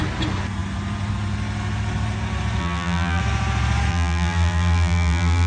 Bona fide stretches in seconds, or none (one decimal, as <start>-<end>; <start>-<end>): 0.0-2.6; 3.2-3.9